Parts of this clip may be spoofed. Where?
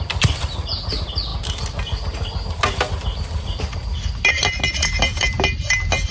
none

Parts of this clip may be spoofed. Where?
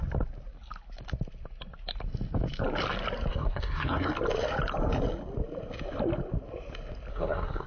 3.3-4.1 (codec, SNAC); 7.1-7.7